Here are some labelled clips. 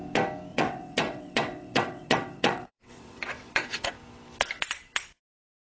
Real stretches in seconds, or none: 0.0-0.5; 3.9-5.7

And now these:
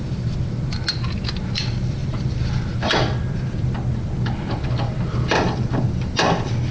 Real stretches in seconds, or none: 0.0-6.7

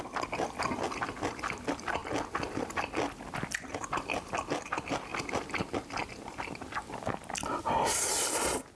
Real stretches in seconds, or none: 0.0-8.8

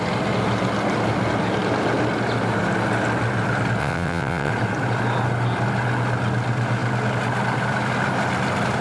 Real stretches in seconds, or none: 0.0-3.8; 4.5-8.8

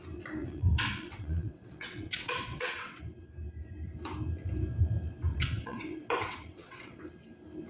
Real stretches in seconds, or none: 0.0-0.4; 3.0-5.3; 7.0-7.7

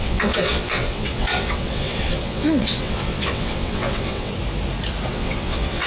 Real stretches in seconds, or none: 4.3-5.1

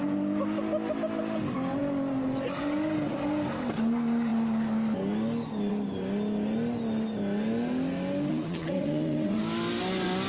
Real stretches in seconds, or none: 0.0-8.3; 9.4-10.3